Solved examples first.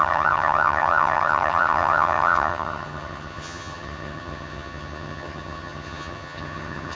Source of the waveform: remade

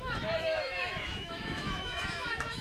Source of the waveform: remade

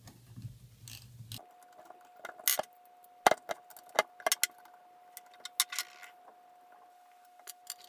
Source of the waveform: recorded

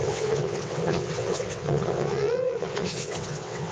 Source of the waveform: remade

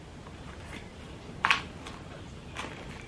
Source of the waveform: recorded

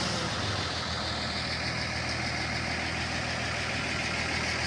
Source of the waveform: recorded